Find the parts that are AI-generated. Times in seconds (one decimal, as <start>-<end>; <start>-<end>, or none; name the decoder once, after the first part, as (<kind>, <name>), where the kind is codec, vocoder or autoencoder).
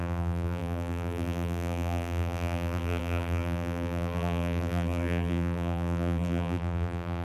0.0-7.2 (vocoder, BigVGAN v2)